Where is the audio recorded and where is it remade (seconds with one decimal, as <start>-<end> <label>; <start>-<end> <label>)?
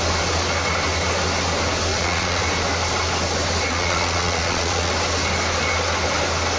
0.0-1.9 recorded; 1.9-2.4 remade; 2.4-3.7 recorded; 3.7-4.9 remade; 4.9-6.6 recorded